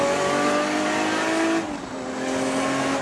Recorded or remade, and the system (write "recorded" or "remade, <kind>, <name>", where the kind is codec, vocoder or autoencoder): recorded